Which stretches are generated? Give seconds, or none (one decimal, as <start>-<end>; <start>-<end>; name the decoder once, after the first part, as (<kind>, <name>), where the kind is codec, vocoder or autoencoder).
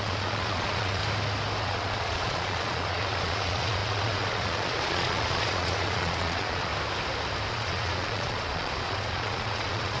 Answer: 0.0-1.0 (vocoder, Vocos); 1.6-6.7; 7.5-10.0